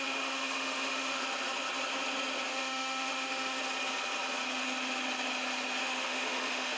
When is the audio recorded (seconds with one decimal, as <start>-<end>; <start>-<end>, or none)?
1.2-2.5; 3.6-5.8